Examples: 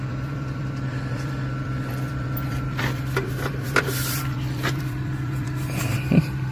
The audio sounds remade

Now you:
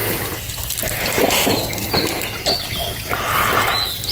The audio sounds recorded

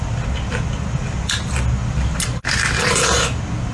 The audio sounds recorded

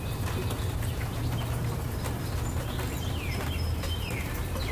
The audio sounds recorded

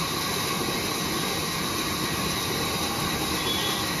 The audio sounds recorded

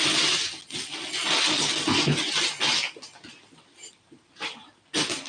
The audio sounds recorded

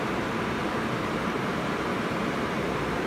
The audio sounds remade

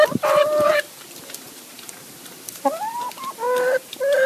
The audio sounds recorded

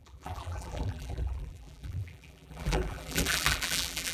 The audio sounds remade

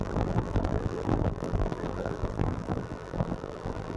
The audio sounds remade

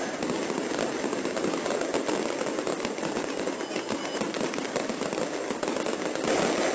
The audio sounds recorded